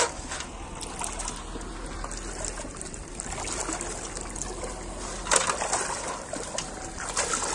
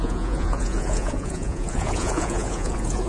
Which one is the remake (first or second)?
second